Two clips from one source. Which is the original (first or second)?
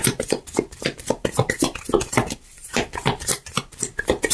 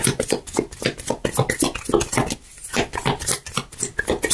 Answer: second